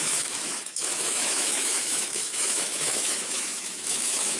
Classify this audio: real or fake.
fake